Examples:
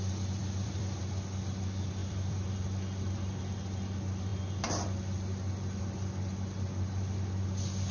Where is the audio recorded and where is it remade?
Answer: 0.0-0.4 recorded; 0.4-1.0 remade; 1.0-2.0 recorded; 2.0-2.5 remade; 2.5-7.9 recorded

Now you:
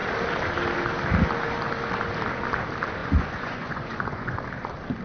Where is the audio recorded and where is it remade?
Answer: 0.0-3.0 recorded; 3.0-4.4 remade; 4.4-5.0 recorded